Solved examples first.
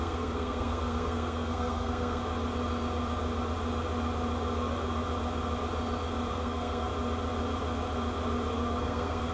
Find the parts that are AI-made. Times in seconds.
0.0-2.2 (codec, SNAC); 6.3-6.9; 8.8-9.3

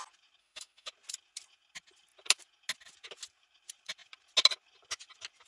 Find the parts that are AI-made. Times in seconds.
0.4-0.9 (autoencoder, DAC-VAE)

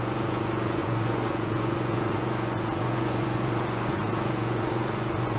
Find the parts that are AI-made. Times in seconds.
0.0-5.4 (vocoder, Vocos)

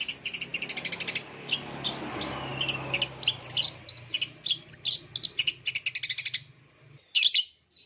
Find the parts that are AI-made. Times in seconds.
none

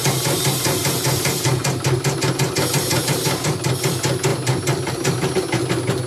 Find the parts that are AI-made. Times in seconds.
0.0-3.7 (vocoder, BigVGAN v2)

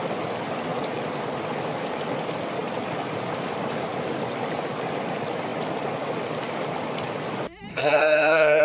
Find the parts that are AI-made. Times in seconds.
7.7-8.6 (codec, SNAC)